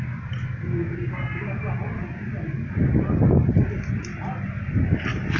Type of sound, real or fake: real